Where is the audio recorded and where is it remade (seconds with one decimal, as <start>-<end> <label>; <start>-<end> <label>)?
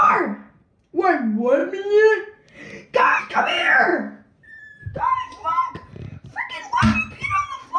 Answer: 0.0-7.8 recorded